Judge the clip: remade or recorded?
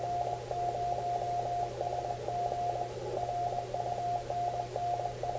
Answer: recorded